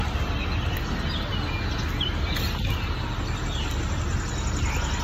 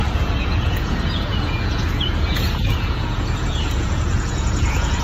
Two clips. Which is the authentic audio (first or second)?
first